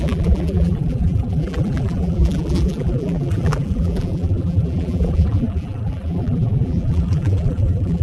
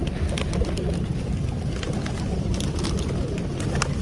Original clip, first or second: second